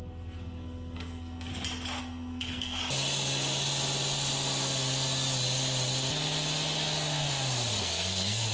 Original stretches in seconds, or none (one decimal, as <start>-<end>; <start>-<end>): 1.5-2.0; 2.8-7.8